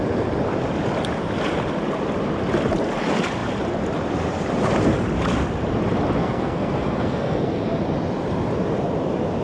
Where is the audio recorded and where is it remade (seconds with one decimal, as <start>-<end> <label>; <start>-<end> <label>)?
0.0-6.2 recorded; 6.2-7.7 remade; 7.7-9.4 recorded